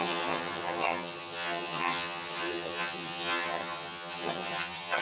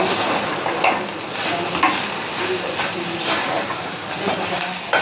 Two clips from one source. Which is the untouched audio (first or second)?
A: second